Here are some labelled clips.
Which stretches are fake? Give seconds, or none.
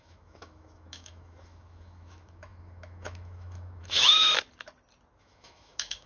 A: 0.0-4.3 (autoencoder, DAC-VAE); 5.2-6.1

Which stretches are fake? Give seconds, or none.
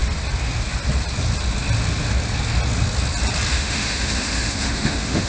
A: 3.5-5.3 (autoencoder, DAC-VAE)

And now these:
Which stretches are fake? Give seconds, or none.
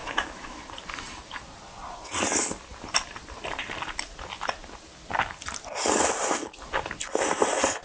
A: 0.0-0.6 (autoencoder, DAC-VAE)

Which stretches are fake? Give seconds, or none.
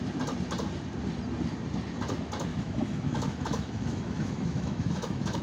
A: 2.5-5.4 (autoencoder, DAC-VAE)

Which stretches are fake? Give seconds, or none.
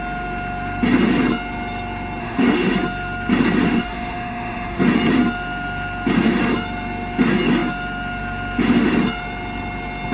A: 2.2-2.7 (autoencoder, DAC-VAE); 3.7-4.8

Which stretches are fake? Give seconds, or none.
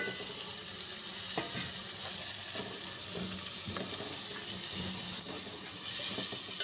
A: none